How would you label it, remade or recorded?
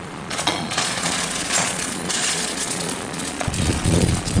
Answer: remade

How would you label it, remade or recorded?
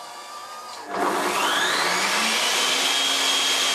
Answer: recorded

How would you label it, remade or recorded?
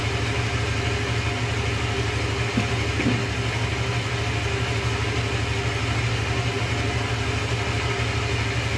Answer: recorded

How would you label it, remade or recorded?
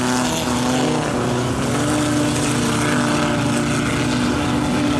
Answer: recorded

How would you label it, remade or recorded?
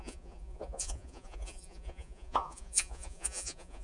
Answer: remade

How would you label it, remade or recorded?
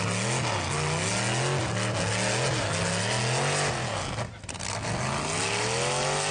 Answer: recorded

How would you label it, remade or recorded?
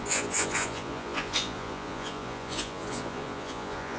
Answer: remade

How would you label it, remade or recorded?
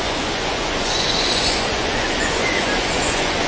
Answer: remade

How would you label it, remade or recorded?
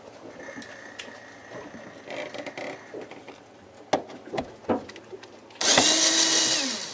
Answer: recorded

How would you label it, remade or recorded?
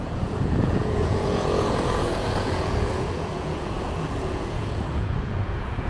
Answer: remade